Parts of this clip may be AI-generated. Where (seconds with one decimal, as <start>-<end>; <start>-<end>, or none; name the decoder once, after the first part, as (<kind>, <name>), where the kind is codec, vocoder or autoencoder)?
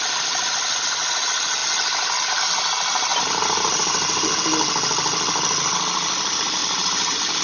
3.1-4.2 (vocoder, BigVGAN v2); 6.6-7.4